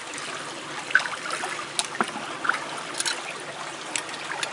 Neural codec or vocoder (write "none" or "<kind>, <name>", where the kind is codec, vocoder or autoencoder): none